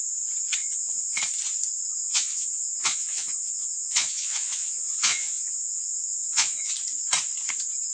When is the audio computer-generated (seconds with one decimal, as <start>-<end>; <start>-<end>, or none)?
0.6-1.2; 2.0-6.7